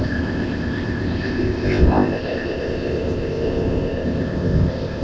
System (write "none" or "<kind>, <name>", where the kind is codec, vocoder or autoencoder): codec, ZipCodec